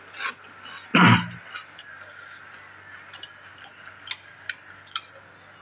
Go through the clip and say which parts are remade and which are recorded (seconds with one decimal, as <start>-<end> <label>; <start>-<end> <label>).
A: 0.0-5.6 recorded